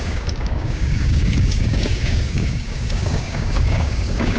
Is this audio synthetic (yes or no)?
yes